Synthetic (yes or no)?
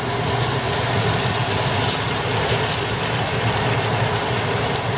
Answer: no